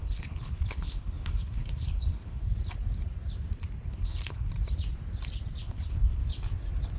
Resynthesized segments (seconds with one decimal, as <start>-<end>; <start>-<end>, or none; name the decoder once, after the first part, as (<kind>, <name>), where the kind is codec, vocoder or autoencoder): 0.0-2.4 (codec, HILCodec); 3.9-4.5; 5.6-6.2

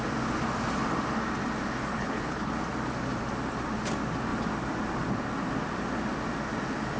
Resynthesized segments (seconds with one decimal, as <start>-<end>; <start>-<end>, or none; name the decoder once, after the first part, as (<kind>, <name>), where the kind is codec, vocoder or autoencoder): 1.9-2.5 (codec, HILCodec)

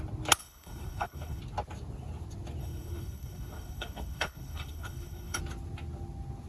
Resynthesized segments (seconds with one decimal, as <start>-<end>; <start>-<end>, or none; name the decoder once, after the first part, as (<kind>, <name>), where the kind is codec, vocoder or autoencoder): 0.4-1.4 (codec, HILCodec); 2.6-5.4

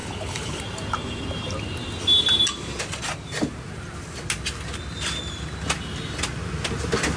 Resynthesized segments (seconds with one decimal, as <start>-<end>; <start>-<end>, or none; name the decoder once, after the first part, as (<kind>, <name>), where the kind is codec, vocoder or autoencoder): 0.0-0.6 (codec, HILCodec)

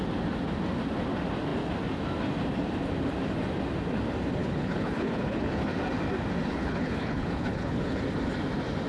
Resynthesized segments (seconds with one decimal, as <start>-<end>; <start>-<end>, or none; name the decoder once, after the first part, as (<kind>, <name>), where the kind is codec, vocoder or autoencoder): 4.4-5.7 (codec, HILCodec); 6.5-8.0